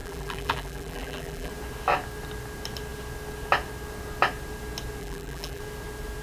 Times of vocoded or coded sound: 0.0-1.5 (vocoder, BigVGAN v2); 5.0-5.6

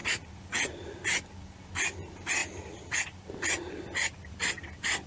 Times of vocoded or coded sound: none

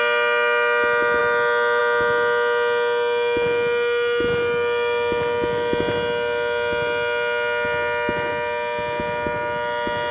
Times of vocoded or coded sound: none

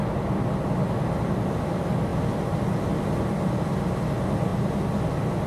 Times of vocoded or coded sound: none

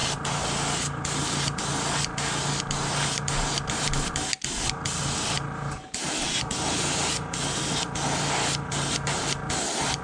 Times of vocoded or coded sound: none

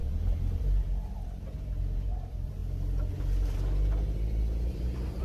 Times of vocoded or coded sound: 0.0-2.6 (vocoder, BigVGAN v2); 4.7-5.2